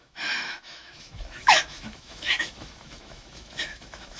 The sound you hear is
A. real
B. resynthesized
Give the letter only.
B